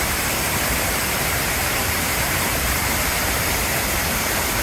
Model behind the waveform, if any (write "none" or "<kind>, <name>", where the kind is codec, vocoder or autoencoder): vocoder, BigVGAN v2